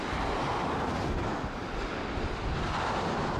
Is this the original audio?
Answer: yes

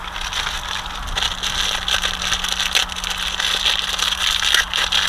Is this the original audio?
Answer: yes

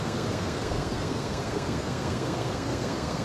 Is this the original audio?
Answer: no